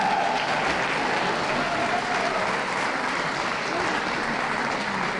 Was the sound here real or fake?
real